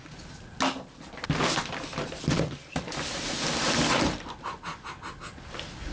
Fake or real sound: real